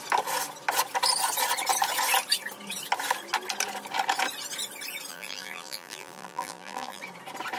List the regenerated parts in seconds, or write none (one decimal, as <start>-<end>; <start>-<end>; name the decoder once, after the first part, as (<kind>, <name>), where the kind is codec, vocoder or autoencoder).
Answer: 5.1-7.0 (vocoder, BigVGAN v2)